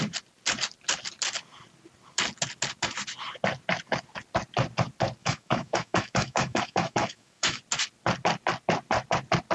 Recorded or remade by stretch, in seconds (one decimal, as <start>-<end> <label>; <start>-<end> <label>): 0.0-5.2 recorded; 5.2-7.6 remade; 7.6-9.5 recorded